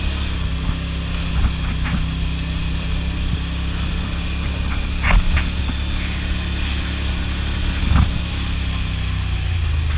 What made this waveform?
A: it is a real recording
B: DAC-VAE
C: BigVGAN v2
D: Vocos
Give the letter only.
A